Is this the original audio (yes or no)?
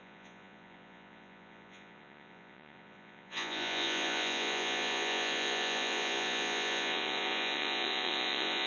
no